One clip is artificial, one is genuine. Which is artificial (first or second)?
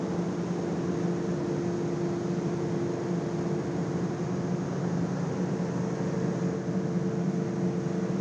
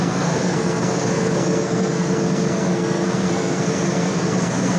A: second